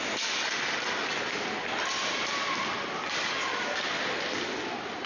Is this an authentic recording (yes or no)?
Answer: yes